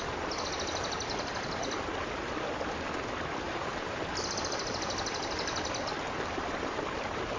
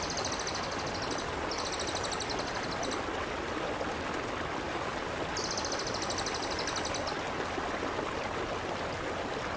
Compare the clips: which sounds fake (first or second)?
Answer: first